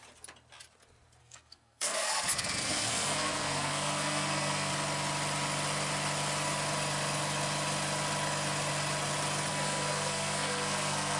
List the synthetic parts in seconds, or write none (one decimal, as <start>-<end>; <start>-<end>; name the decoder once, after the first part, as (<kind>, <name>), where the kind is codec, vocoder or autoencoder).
1.2-4.7 (codec, SNAC); 9.5-11.2